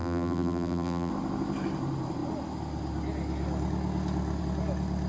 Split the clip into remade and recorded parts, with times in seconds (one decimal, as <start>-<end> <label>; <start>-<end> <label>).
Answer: 0.0-1.1 remade; 1.1-5.1 recorded